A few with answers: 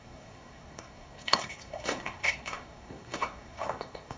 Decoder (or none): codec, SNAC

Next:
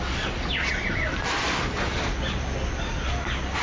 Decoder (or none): none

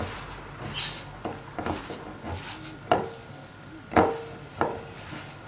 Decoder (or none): none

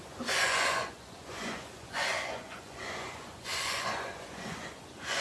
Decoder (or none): vocoder, Vocos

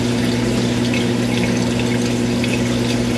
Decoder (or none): none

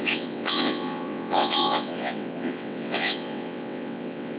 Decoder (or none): vocoder, WaveNeXt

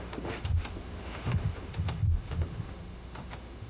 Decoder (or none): autoencoder, DAC-VAE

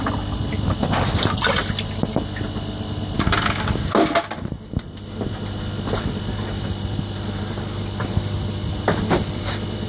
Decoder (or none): vocoder, BigVGAN v2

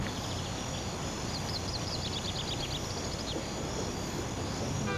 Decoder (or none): none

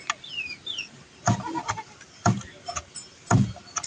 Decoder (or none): none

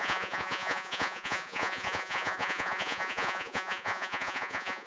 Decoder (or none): vocoder, Vocos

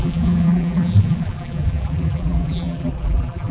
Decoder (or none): vocoder, BigVGAN v2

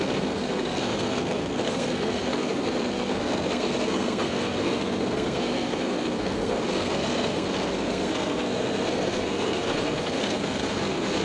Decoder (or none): codec, SNAC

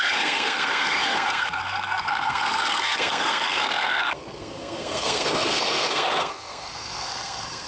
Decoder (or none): codec, SNAC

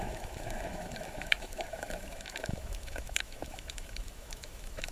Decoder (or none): autoencoder, DAC-VAE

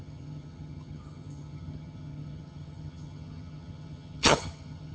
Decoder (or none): vocoder, HiFi-GAN